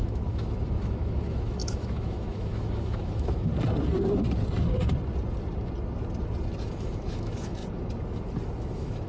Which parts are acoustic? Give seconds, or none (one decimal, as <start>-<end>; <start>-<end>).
3.5-6.7; 7.6-8.6